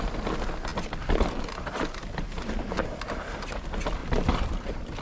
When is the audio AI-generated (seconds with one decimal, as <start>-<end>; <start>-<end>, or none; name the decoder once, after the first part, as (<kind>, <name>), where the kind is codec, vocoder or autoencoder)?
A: 4.0-4.5 (vocoder, BigVGAN v2)